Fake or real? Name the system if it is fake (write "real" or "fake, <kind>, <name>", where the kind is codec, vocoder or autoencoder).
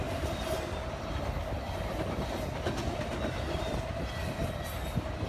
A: real